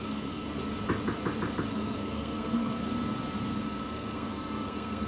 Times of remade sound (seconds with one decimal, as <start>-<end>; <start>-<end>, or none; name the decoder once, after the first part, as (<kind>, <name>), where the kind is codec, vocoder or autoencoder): 0.0-0.6 (codec, SNAC); 1.7-2.8; 3.6-5.1